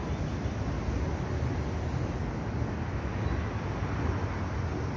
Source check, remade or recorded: recorded